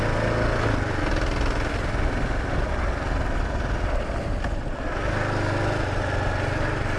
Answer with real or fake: real